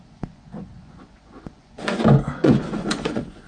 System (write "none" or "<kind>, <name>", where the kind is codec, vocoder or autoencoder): vocoder, Vocos